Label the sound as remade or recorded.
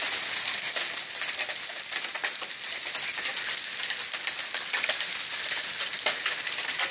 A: recorded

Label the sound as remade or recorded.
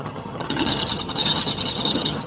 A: remade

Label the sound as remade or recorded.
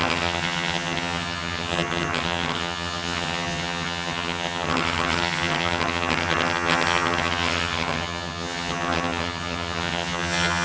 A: remade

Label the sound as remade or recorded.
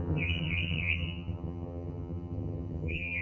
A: remade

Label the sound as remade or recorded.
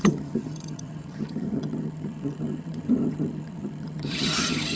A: remade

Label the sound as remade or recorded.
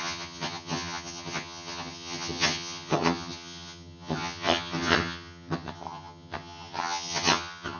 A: remade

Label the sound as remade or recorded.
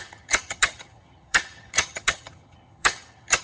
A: remade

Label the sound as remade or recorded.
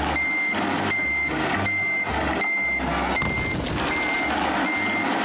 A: recorded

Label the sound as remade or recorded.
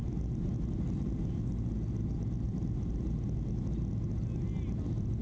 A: recorded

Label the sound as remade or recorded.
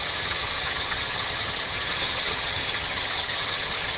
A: remade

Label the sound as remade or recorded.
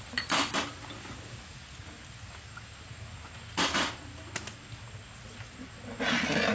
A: recorded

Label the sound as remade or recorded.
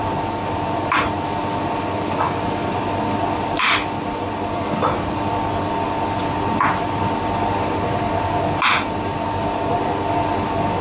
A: recorded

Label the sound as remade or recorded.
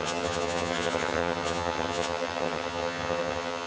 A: remade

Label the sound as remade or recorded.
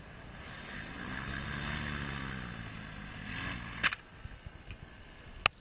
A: recorded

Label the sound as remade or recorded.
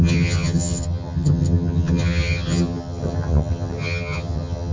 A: remade